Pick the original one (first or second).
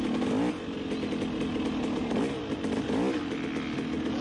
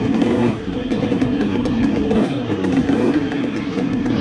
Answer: first